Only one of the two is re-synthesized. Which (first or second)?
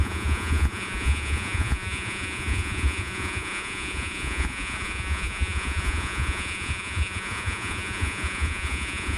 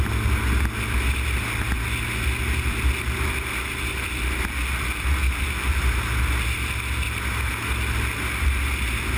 first